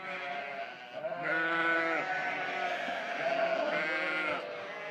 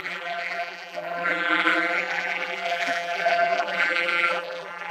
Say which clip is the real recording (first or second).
first